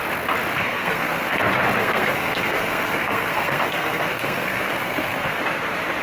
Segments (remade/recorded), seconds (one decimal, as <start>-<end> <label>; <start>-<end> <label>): 0.0-0.5 recorded; 0.5-1.4 remade; 1.4-1.8 recorded; 1.8-5.4 remade; 5.4-6.0 recorded